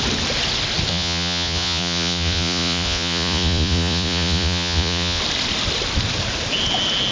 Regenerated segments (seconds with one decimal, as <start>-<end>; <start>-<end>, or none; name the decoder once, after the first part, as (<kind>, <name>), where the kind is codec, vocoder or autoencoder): 0.9-5.2 (vocoder, Vocos)